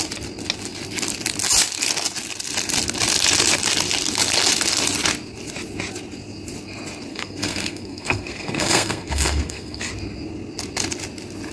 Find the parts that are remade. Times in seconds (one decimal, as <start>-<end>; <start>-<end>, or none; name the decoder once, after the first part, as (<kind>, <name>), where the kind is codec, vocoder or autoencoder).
7.1-9.9 (codec, SNAC)